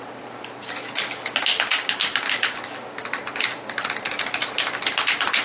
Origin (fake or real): real